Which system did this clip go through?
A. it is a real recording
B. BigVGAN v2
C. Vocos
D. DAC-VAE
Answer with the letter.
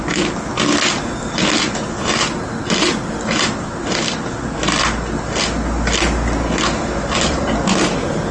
A